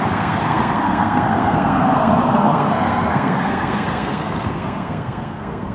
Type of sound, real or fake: fake